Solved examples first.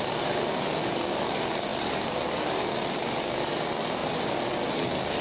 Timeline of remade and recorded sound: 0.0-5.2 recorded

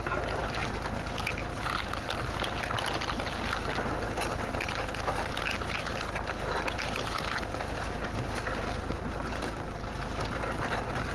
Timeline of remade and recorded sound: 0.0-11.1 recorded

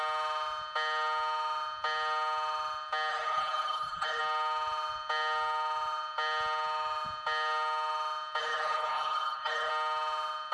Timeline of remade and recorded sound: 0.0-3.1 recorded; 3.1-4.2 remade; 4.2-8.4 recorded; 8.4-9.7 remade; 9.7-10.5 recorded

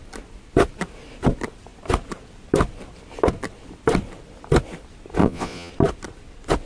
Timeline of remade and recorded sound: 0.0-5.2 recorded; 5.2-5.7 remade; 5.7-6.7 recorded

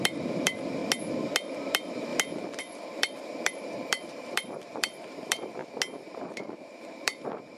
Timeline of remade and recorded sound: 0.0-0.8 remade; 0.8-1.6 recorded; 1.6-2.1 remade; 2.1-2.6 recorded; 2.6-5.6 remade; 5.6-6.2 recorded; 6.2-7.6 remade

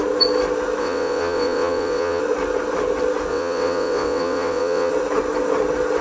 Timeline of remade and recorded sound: 0.0-0.8 recorded; 0.8-2.2 remade; 2.2-3.3 recorded; 3.3-4.9 remade; 4.9-6.0 recorded